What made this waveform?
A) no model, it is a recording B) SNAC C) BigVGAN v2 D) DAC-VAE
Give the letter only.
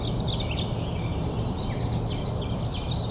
A